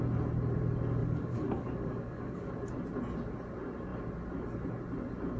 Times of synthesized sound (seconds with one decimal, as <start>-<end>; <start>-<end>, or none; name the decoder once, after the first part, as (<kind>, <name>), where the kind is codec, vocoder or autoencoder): 1.0-2.5 (codec, DAC)